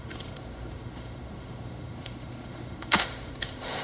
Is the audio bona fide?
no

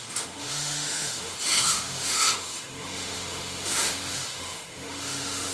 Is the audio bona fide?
no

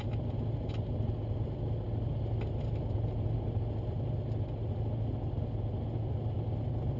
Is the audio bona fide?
yes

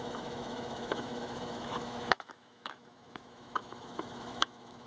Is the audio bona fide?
no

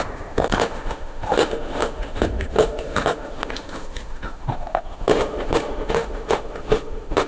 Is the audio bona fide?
no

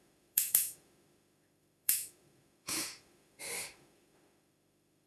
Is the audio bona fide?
no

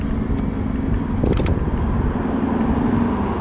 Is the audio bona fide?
yes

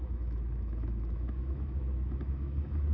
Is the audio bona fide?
no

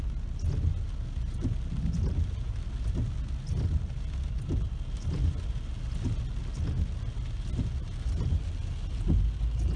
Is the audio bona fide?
yes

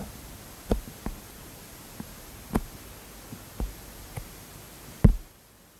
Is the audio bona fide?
yes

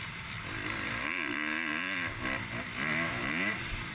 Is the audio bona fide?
yes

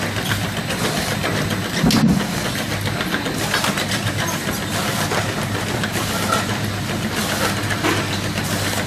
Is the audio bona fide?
yes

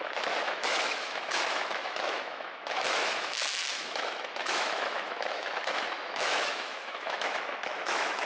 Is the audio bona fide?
no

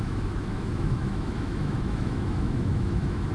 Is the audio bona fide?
no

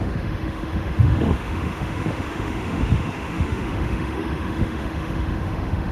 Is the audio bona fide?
no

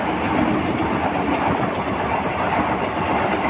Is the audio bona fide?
yes